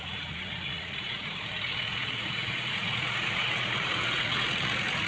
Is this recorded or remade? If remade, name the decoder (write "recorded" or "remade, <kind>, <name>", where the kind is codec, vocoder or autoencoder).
remade, vocoder, Vocos